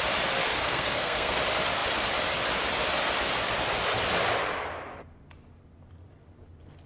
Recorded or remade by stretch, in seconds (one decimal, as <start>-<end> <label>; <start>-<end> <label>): 0.0-0.5 recorded; 0.5-1.4 remade; 1.4-6.9 recorded